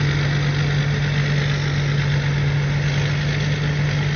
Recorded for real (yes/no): yes